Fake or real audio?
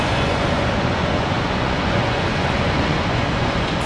fake